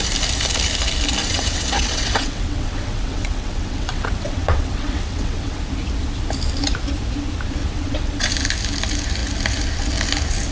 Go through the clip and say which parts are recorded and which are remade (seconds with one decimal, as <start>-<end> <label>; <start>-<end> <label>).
0.0-1.2 recorded; 1.2-5.6 remade; 5.6-7.6 recorded; 7.6-8.3 remade; 8.3-10.5 recorded